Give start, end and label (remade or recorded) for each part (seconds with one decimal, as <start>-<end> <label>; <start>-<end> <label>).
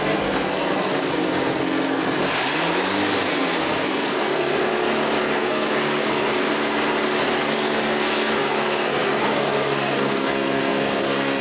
0.0-2.2 remade; 2.2-3.2 recorded; 3.2-4.7 remade; 4.7-5.2 recorded; 5.2-6.5 remade; 6.5-7.4 recorded; 7.4-11.4 remade